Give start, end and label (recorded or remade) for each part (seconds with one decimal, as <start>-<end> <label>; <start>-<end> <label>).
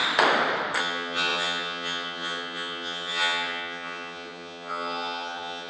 0.0-0.8 recorded; 0.8-5.7 remade